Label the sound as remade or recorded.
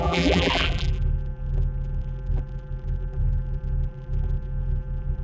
remade